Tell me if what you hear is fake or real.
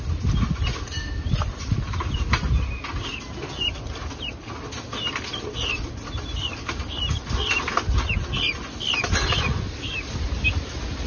real